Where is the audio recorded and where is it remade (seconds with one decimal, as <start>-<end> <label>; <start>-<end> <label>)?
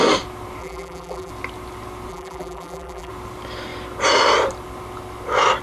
0.0-0.6 recorded; 0.6-1.3 remade; 1.3-2.1 recorded; 2.1-3.1 remade; 3.1-5.6 recorded